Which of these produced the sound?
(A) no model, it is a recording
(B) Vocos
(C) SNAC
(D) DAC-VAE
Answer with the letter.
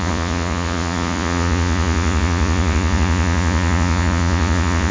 B